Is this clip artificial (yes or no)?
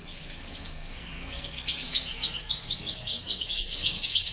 yes